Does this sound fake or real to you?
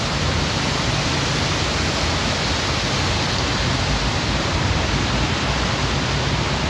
real